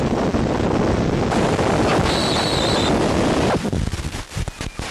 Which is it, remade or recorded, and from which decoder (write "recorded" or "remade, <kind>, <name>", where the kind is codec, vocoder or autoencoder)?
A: recorded